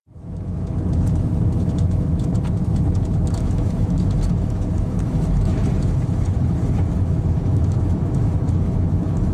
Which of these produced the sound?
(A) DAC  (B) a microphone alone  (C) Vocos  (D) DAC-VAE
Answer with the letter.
D